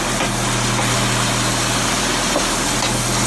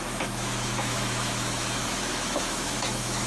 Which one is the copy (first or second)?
second